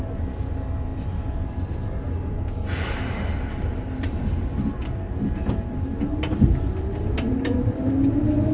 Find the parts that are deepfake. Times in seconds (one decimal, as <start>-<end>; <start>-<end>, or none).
none